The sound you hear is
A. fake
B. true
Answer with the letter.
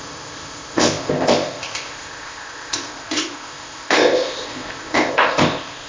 A